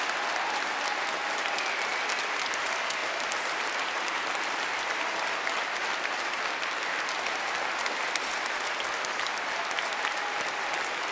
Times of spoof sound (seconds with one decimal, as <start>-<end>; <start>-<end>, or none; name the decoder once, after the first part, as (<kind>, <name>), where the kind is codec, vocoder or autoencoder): none